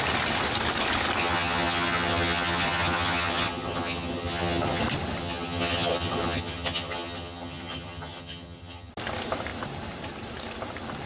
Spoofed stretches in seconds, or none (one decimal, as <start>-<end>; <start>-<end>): 1.2-4.8; 5.2-8.9